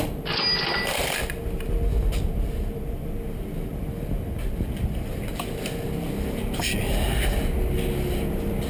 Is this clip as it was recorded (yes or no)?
yes